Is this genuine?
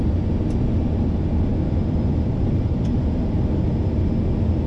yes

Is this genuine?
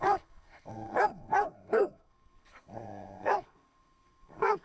no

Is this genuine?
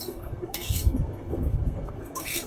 no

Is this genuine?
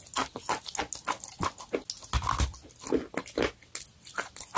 yes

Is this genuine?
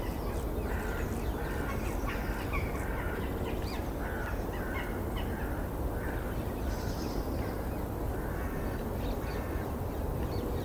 yes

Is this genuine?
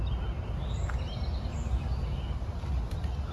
yes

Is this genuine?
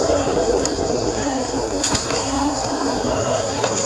no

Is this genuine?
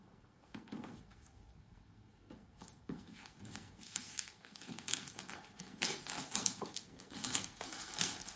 no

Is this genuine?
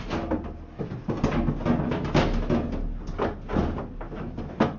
yes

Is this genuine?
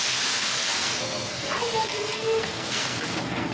no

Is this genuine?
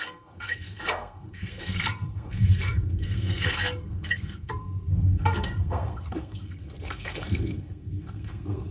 no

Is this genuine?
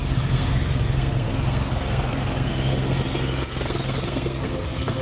no